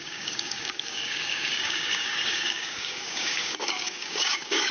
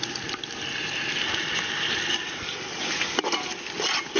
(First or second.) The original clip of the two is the second